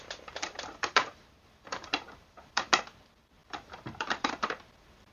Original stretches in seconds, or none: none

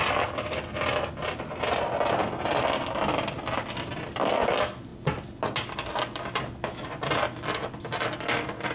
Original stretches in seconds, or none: 0.0-8.7

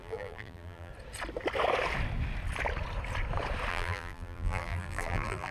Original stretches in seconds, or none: 0.9-3.7

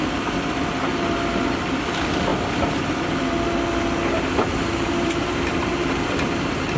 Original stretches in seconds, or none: 0.0-4.1

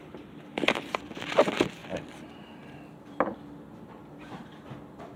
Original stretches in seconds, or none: 0.0-4.0; 4.5-5.2